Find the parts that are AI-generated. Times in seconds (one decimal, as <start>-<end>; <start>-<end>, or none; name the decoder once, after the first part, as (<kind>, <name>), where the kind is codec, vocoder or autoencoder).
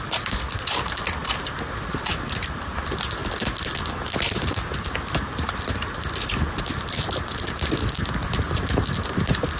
none